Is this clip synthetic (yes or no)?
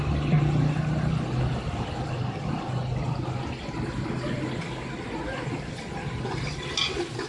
no